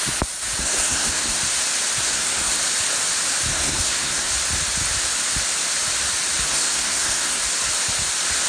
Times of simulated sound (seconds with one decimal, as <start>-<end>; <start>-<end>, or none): 0.6-1.4; 2.0-2.6; 3.5-4.3; 6.5-7.4